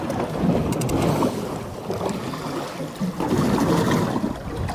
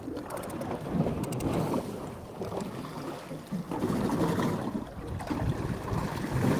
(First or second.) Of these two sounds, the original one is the first